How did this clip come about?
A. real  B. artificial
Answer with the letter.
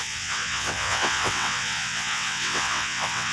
B